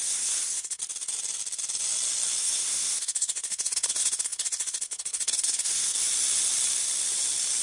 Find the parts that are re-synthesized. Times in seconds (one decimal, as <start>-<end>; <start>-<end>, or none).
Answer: 0.0-0.8; 2.4-5.9